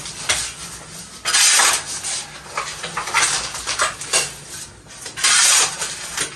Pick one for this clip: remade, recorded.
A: recorded